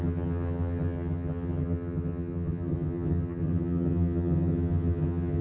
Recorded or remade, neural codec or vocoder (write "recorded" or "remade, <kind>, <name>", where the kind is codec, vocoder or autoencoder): remade, vocoder, HiFi-GAN